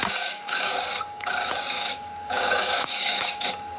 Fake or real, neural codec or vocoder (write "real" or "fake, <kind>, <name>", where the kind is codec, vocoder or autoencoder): fake, codec, DAC